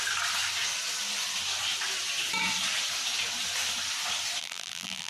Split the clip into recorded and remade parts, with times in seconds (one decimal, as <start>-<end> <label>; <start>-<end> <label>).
0.0-4.4 recorded; 4.4-5.1 remade